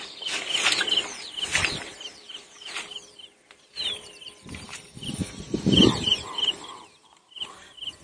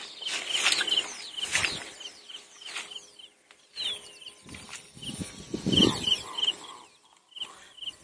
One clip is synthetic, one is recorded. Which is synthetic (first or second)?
first